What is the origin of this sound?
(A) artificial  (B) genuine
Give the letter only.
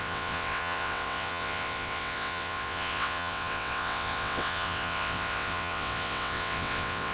A